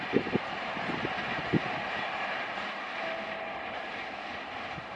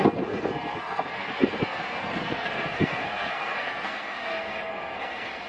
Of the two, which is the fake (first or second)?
second